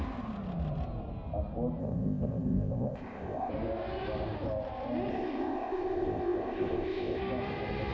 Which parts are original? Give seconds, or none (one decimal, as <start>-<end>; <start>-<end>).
0.0-1.8; 3.5-5.1; 7.2-7.9